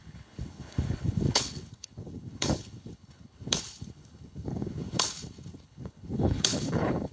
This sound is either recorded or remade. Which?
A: remade